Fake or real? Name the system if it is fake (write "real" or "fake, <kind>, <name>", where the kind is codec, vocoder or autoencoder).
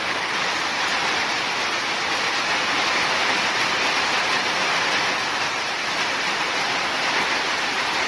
real